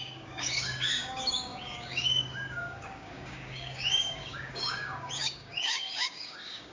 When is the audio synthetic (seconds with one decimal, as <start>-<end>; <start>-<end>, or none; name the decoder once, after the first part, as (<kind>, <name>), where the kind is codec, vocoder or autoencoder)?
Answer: 0.0-6.7 (codec, DAC)